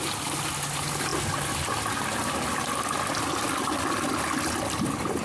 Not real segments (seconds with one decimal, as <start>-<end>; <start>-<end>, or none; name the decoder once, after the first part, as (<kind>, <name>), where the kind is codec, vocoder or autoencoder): none